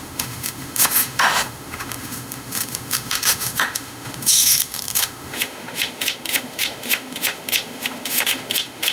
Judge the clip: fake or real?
fake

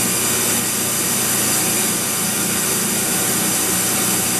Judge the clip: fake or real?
real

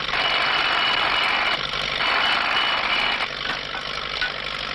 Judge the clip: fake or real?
real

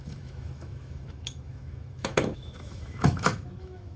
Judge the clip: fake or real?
fake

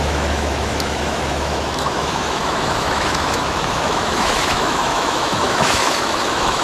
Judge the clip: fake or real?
fake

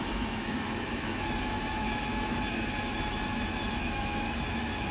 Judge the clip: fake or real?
fake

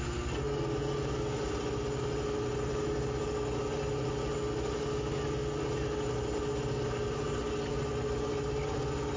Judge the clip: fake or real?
real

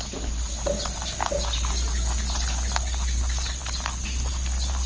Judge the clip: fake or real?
real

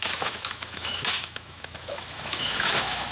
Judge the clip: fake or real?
fake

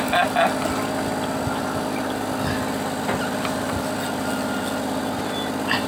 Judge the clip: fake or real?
real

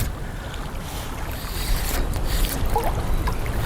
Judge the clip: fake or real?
real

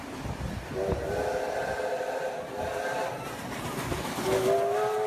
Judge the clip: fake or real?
real